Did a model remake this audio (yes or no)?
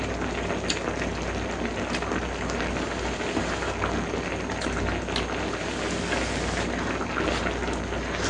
no